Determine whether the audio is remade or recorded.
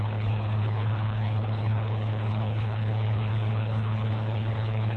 remade